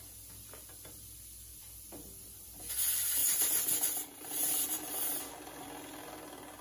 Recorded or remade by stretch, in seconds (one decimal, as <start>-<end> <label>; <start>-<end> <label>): 0.0-1.5 recorded; 1.5-2.6 remade; 2.6-3.2 recorded; 3.2-4.9 remade; 4.9-6.6 recorded

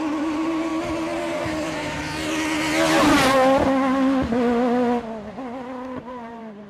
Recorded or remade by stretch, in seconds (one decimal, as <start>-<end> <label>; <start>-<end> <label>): 0.0-0.7 remade; 0.7-1.2 recorded; 1.2-2.0 remade; 2.0-6.0 recorded; 6.0-6.7 remade

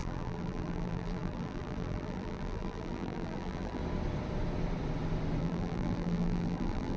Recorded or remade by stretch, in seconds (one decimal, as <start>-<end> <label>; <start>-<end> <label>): 0.0-3.8 remade; 3.8-5.4 recorded; 5.4-7.0 remade

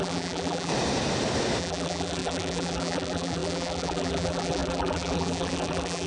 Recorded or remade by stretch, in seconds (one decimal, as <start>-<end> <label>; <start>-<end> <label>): 0.0-0.7 remade; 0.7-1.6 recorded; 1.6-6.1 remade